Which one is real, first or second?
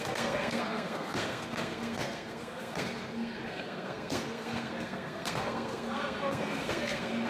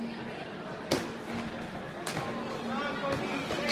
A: second